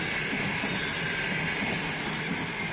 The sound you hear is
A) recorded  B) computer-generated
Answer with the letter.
A